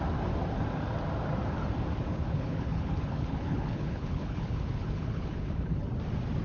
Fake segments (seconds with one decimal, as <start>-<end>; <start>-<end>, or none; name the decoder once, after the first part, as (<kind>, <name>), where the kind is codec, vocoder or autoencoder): 2.1-5.9 (codec, HILCodec)